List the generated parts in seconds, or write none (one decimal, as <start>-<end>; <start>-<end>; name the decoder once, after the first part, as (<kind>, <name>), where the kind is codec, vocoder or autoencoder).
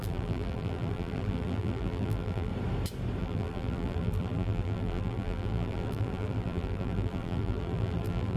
0.0-2.5 (vocoder, BigVGAN v2); 3.2-8.4